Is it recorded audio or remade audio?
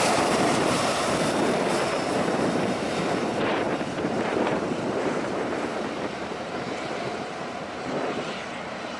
remade